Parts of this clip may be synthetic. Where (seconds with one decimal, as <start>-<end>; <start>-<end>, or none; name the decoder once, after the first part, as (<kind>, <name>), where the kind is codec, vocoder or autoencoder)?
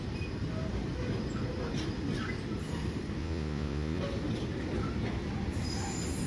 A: 3.2-4.0 (vocoder, Vocos)